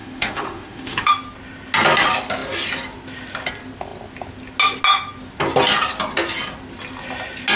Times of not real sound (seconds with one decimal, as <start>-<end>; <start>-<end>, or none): 0.0-1.1